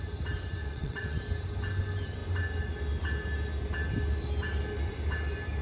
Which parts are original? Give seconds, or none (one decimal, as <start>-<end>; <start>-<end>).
0.0-0.6; 1.2-5.6